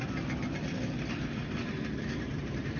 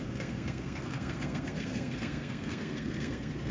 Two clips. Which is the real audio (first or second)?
first